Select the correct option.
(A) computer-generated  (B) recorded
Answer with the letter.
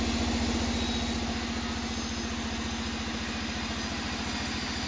B